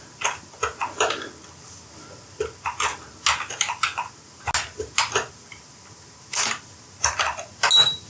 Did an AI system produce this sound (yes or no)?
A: no